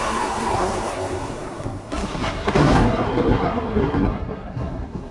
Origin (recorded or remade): remade